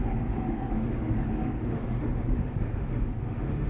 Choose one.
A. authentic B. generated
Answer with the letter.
B